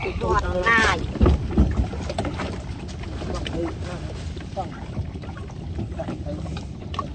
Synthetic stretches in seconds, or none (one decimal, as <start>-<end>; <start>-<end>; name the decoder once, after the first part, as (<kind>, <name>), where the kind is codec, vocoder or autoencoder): 0.0-5.4 (vocoder, BigVGAN v2); 6.6-7.1